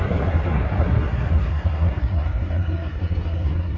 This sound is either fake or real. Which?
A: fake